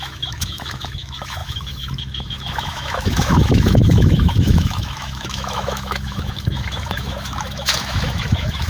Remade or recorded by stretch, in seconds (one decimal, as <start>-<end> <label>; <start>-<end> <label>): 0.0-8.7 remade